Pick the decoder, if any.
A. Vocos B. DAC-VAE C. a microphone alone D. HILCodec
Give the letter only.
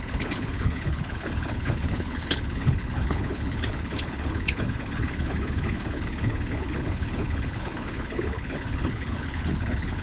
D